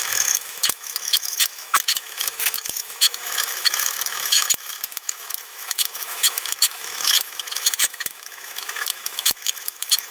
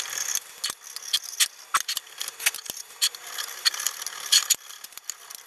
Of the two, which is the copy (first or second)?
first